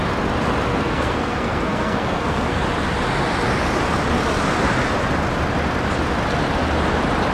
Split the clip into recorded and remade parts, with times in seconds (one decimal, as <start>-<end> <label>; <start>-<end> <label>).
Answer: 0.0-0.7 recorded; 0.7-2.6 remade; 2.6-7.3 recorded